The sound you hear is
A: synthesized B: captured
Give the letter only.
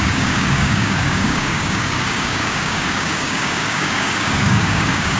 A